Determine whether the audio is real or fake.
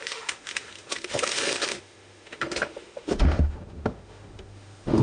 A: fake